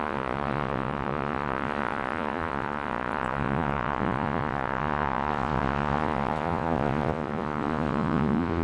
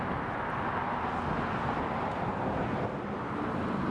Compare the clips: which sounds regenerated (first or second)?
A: first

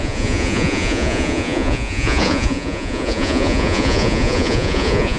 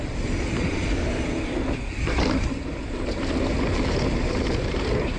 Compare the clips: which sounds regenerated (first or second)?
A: first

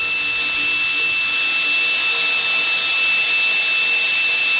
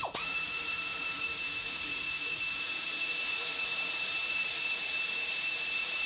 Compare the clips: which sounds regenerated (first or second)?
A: second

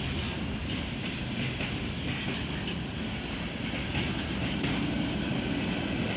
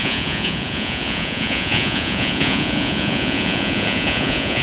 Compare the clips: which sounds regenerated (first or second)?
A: second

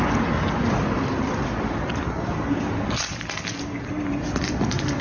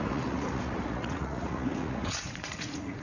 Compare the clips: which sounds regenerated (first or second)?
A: second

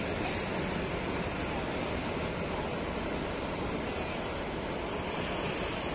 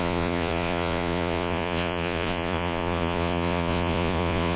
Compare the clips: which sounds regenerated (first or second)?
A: second